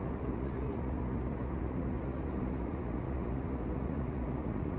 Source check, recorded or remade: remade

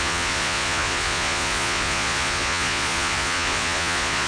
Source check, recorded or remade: remade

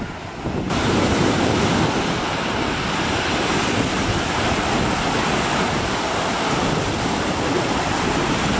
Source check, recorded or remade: recorded